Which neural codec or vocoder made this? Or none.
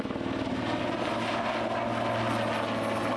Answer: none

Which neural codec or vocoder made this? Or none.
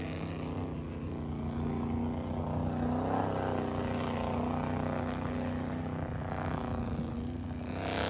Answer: none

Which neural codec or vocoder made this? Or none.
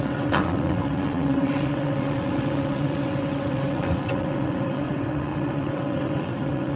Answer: vocoder, WaveNeXt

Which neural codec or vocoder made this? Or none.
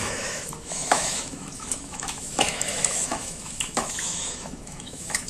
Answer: autoencoder, DAC-VAE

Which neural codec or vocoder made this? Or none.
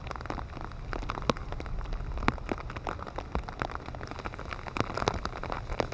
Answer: none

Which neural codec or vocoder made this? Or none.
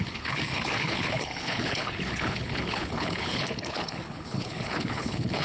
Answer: codec, HILCodec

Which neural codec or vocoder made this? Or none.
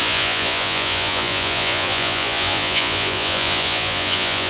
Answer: vocoder, Vocos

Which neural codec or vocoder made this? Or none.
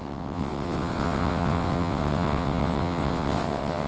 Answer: vocoder, WaveNeXt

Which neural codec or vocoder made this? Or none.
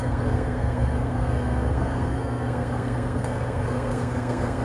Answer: codec, SNAC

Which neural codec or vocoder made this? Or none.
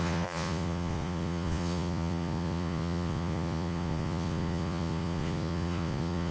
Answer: vocoder, Vocos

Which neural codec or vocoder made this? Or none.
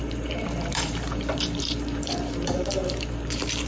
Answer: vocoder, BigVGAN v2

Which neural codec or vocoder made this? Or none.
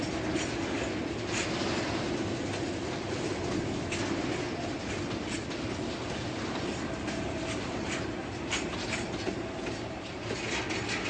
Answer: none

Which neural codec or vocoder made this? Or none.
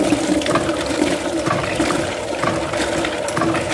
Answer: none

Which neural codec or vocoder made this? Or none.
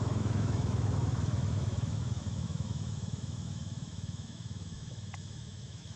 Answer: autoencoder, DAC-VAE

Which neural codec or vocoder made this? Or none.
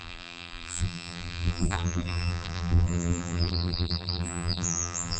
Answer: vocoder, BigVGAN v2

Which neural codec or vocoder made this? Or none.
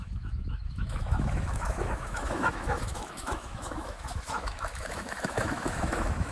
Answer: autoencoder, DAC-VAE